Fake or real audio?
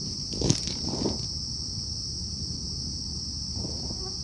real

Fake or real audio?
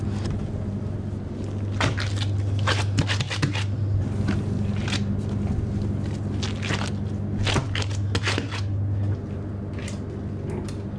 real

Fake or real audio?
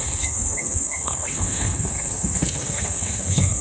fake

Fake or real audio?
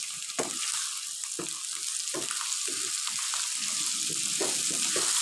real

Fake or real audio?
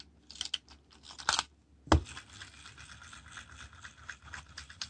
real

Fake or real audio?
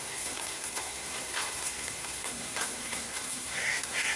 fake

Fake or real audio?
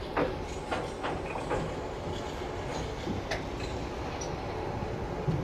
real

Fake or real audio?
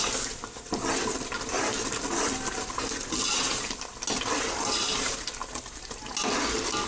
real